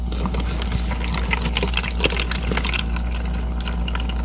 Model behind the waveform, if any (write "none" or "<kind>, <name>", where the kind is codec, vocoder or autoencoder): none